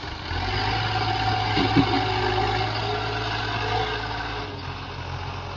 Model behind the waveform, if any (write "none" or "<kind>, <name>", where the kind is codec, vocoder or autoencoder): none